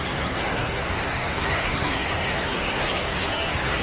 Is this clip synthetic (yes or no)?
yes